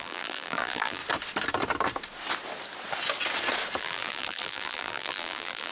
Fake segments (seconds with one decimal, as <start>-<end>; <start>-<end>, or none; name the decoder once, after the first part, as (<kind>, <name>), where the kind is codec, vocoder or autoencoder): 0.0-1.0 (vocoder, BigVGAN v2); 3.8-5.7